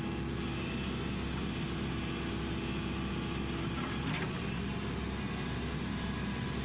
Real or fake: real